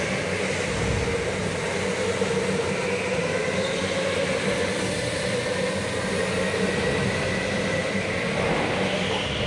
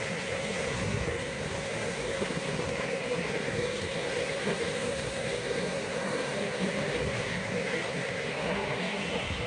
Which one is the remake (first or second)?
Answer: second